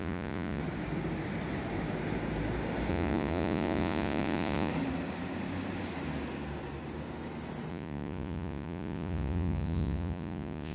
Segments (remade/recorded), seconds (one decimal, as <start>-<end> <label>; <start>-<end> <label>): 0.0-0.6 remade; 0.6-2.9 recorded; 2.9-4.7 remade; 4.7-7.7 recorded; 7.7-10.7 remade